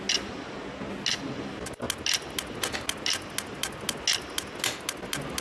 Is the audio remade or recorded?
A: recorded